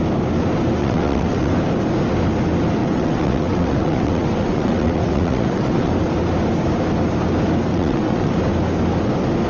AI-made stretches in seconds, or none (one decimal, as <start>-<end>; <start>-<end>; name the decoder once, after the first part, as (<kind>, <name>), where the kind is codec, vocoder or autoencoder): 0.8-1.5 (vocoder, WaveNeXt); 2.8-5.9; 7.7-8.3

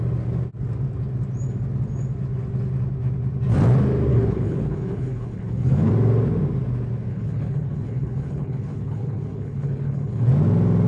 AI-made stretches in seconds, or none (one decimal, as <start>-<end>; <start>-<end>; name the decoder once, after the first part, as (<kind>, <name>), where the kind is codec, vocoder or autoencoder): 4.1-5.9 (codec, HILCodec); 7.1-10.3